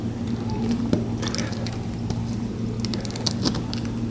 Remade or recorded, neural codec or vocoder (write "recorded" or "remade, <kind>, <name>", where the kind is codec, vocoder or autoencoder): recorded